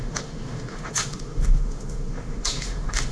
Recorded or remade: remade